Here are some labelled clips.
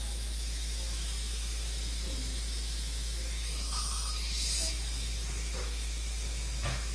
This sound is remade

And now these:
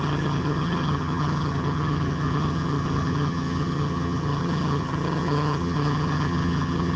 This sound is remade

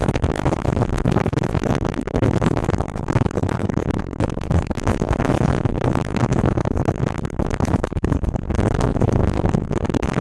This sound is remade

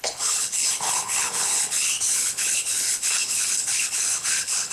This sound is remade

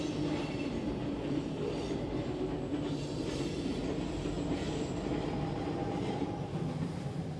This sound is recorded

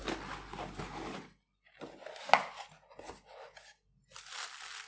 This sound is recorded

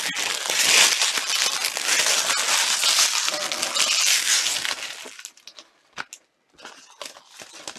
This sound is recorded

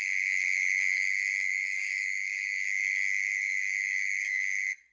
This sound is remade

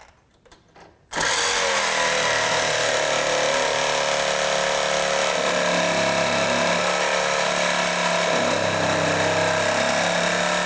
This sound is recorded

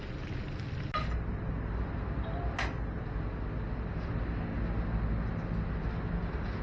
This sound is recorded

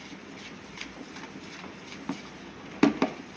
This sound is recorded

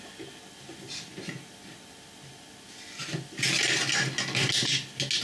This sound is recorded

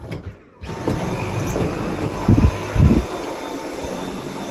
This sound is remade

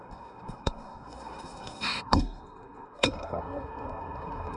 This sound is remade